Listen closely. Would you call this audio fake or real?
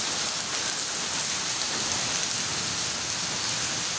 real